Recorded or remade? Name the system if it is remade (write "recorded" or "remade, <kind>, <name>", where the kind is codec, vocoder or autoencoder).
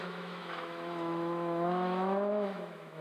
remade, autoencoder, DAC-VAE